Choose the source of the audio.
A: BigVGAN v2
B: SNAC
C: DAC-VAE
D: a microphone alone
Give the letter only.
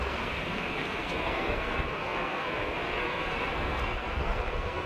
B